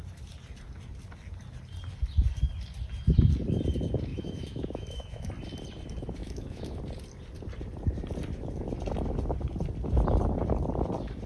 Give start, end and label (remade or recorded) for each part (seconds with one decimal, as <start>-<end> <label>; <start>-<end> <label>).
0.0-4.1 recorded; 4.1-5.3 remade; 5.3-6.2 recorded; 6.2-6.8 remade; 6.8-11.3 recorded